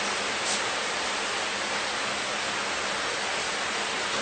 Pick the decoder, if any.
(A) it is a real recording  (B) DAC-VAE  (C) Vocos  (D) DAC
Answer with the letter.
A